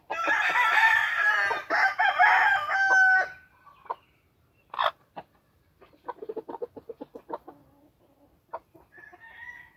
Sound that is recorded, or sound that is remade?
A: recorded